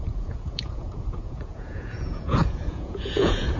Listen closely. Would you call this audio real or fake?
fake